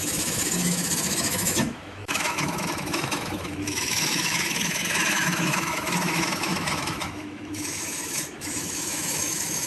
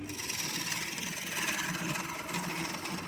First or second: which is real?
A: second